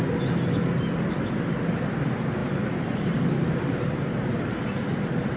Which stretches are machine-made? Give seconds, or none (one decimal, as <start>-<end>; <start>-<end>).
none